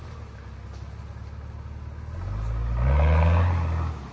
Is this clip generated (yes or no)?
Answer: no